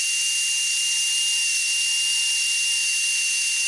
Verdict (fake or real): real